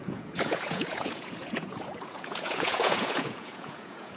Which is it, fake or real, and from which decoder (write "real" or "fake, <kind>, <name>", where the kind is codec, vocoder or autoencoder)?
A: fake, vocoder, Vocos